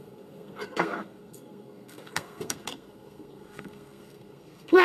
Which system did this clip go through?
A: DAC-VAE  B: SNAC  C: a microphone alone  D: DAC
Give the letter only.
B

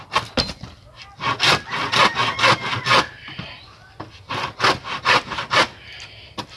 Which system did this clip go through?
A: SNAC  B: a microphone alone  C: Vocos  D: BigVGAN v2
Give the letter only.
B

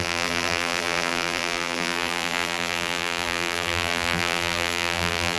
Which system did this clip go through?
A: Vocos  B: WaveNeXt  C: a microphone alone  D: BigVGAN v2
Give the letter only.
D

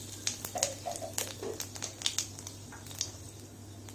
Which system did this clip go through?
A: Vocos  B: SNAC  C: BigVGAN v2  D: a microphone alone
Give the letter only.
D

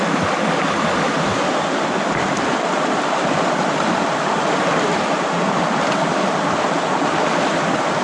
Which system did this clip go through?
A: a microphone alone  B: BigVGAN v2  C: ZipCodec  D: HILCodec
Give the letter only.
A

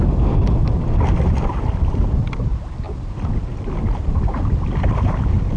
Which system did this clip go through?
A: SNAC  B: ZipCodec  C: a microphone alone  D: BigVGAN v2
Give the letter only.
C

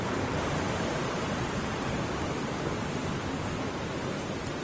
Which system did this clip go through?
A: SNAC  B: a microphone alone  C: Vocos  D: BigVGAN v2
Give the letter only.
B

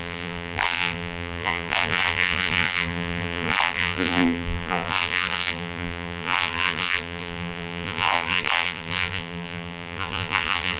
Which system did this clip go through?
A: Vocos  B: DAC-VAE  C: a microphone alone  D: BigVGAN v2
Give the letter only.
D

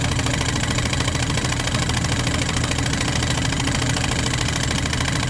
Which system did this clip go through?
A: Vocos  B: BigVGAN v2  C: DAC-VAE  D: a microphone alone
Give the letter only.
D